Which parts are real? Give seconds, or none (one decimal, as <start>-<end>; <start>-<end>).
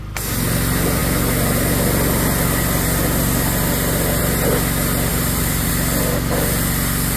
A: 0.0-5.1; 5.7-7.2